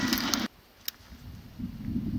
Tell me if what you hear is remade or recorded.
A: recorded